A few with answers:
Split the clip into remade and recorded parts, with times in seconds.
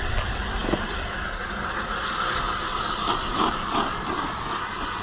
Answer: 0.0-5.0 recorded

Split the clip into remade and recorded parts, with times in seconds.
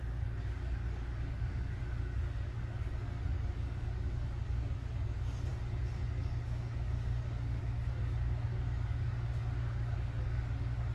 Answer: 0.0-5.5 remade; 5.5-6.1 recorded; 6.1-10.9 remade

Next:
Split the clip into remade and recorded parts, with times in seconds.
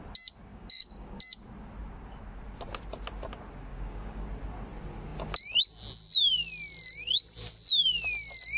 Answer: 0.0-0.5 recorded; 0.5-1.2 remade; 1.2-3.7 recorded; 3.7-4.3 remade; 4.3-8.6 recorded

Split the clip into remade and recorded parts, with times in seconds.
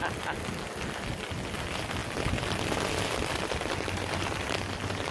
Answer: 0.0-5.1 recorded